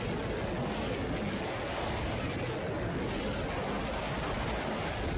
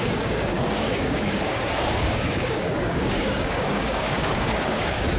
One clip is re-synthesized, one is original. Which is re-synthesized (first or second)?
second